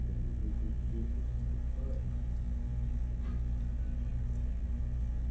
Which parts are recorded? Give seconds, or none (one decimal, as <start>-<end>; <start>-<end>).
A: 0.0-5.3